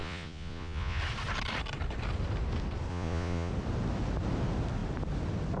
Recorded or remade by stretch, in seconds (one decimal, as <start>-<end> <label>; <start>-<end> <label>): 0.0-1.0 remade; 1.0-2.9 recorded; 2.9-3.5 remade; 3.5-5.6 recorded